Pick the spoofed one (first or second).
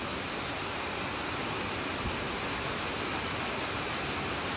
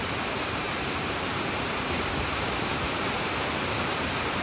second